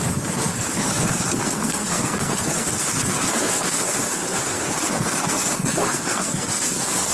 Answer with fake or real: fake